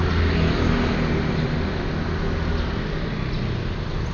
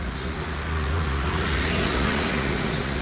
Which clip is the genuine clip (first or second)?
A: first